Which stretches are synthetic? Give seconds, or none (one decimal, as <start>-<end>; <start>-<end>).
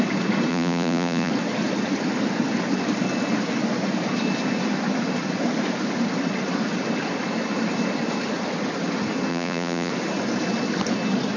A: 0.5-1.3; 9.3-9.9